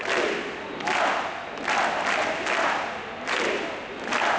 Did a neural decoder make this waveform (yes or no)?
no